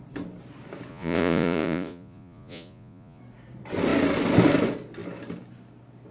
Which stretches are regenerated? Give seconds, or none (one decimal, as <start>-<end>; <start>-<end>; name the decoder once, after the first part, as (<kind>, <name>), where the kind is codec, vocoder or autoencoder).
0.9-3.2 (vocoder, Vocos)